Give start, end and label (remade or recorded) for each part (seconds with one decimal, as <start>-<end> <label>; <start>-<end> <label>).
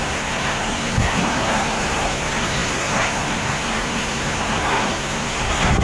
0.0-5.8 remade